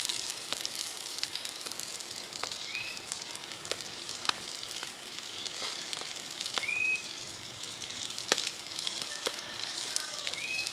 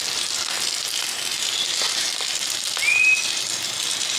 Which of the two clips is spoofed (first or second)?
first